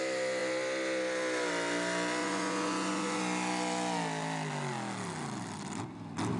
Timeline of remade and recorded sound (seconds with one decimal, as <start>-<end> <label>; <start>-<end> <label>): 0.0-2.2 recorded; 2.2-3.2 remade; 3.2-6.4 recorded

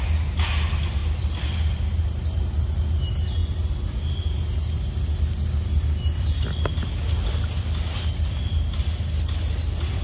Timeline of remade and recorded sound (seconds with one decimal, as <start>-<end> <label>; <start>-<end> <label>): 0.0-10.0 recorded

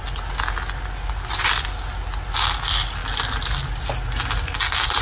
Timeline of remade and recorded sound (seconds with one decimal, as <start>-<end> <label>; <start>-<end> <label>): 0.0-5.0 recorded

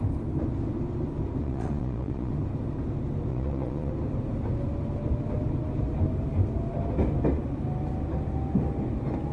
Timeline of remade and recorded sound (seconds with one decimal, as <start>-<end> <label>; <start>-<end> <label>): 0.0-1.4 recorded; 1.4-2.3 remade; 2.3-3.3 recorded; 3.3-3.9 remade; 3.9-9.3 recorded

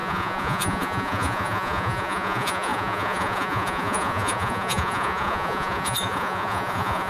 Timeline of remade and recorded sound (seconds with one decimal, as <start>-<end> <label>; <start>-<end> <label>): 0.0-7.1 remade